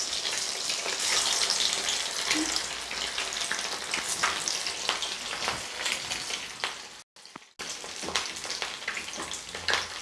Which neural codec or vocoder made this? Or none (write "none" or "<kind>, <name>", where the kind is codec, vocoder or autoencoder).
none